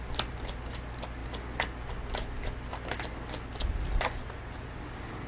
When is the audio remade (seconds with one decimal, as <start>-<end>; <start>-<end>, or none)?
none